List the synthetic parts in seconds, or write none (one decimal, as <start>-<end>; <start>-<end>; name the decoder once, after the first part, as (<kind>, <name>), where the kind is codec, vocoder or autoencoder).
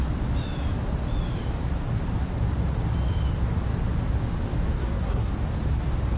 4.8-5.3 (codec, SNAC)